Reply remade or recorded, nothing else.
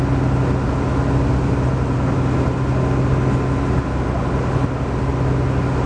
recorded